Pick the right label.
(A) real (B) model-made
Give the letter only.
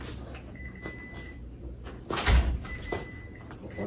A